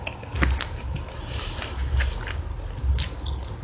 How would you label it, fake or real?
real